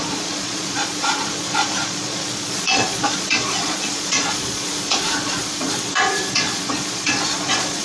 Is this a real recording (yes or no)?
no